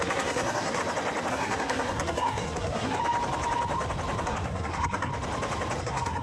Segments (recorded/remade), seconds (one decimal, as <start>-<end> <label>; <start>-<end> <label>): 0.0-0.8 remade; 0.8-1.3 recorded; 1.3-3.0 remade; 3.0-4.2 recorded; 4.2-5.1 remade; 5.1-5.8 recorded; 5.8-6.2 remade